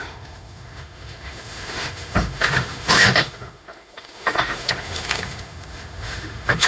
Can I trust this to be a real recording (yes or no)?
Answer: no